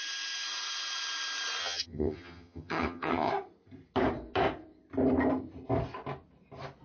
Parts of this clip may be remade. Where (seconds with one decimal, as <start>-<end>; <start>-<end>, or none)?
1.6-3.3